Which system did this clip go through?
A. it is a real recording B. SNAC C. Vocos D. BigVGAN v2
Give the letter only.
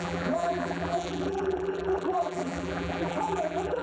D